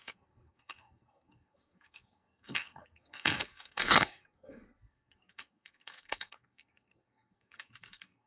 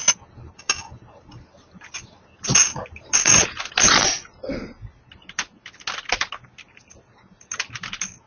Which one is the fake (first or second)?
first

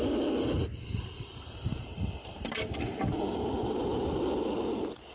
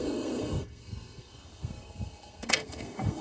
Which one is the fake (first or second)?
second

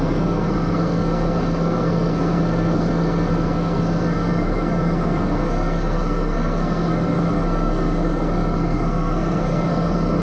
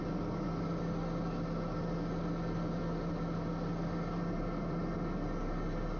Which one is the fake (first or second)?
first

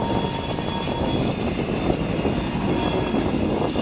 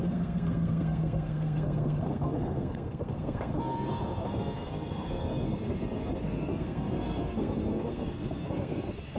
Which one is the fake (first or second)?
second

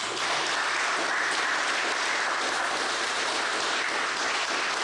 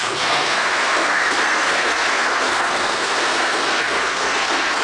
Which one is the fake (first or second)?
second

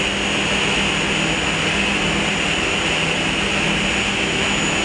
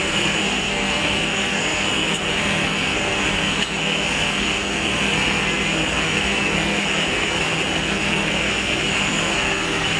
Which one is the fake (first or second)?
second